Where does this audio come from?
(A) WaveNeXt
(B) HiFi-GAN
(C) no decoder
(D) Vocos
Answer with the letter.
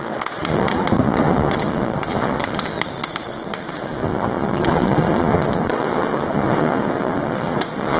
D